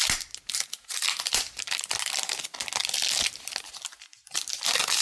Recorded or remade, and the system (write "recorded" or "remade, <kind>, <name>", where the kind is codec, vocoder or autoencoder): recorded